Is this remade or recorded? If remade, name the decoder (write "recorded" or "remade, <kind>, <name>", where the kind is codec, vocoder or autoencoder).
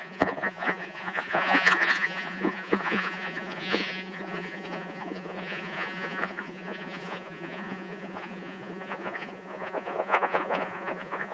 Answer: remade, vocoder, Vocos